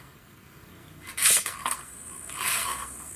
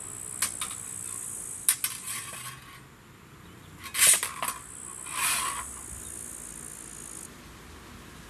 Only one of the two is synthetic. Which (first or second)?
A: first